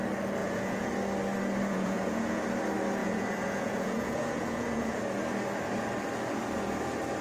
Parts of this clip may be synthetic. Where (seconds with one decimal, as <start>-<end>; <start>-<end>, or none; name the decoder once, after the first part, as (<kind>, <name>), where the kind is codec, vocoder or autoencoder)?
0.4-0.9 (vocoder, Vocos); 1.7-2.4; 3.0-5.0